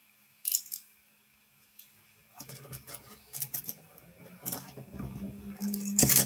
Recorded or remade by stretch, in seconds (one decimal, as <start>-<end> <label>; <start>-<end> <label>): 0.0-6.3 remade